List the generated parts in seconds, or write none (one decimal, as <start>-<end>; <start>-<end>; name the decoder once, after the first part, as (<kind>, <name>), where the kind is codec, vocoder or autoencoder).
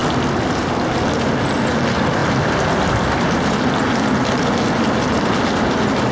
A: none